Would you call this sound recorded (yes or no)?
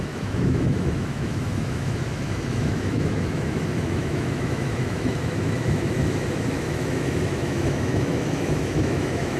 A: no